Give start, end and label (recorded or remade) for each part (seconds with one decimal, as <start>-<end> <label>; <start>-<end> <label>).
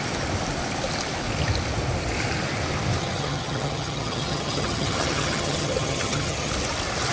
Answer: 0.0-3.0 recorded; 3.0-6.5 remade; 6.5-7.1 recorded